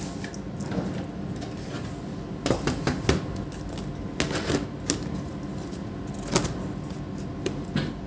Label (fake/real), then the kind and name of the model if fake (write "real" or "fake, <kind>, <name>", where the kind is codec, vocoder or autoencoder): real